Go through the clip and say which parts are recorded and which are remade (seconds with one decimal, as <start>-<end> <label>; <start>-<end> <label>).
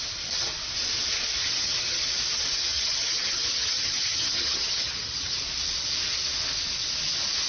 0.0-1.4 recorded; 1.4-2.0 remade; 2.0-2.7 recorded; 2.7-5.4 remade; 5.4-7.5 recorded